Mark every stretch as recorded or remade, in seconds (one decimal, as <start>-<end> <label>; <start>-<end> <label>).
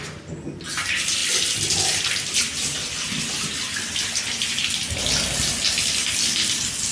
0.0-6.9 recorded